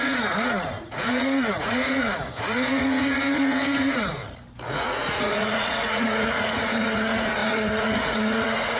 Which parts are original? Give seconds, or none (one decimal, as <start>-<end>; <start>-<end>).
4.2-4.7